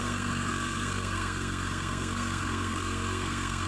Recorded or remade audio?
remade